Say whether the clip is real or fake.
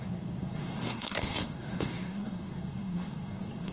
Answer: fake